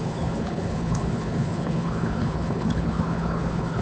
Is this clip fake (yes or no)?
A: yes